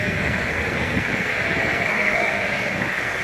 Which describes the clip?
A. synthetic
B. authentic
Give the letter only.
A